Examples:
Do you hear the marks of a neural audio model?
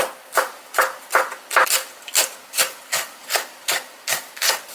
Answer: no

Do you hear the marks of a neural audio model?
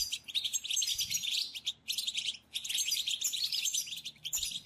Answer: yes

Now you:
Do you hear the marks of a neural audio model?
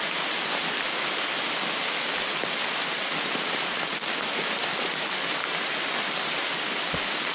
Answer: no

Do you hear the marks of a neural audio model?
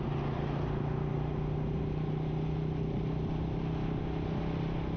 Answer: no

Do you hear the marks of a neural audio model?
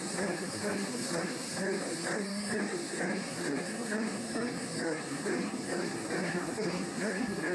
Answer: yes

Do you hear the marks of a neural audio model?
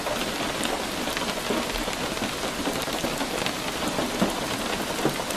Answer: no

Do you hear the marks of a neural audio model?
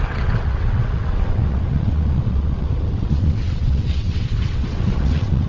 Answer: yes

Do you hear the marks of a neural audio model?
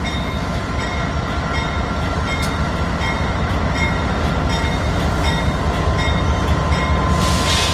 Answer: no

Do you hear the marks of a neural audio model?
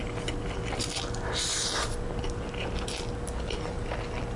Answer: no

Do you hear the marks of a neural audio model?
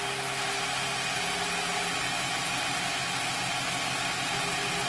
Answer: no